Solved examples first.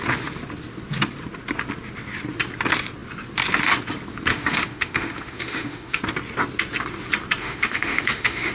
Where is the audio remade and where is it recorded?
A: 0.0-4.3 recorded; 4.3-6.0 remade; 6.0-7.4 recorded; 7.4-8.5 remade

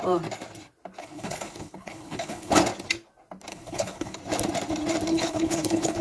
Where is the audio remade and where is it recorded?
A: 0.0-1.0 recorded; 1.0-2.5 remade; 2.5-3.5 recorded; 3.5-4.2 remade; 4.2-5.1 recorded; 5.1-6.0 remade

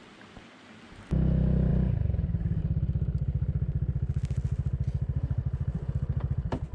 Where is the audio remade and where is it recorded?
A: 0.0-6.7 remade

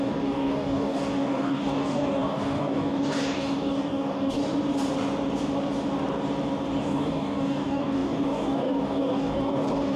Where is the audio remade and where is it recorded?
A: 0.0-4.4 remade; 4.4-6.8 recorded; 6.8-10.0 remade